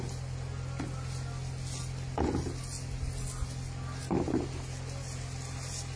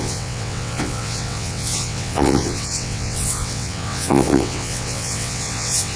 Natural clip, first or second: first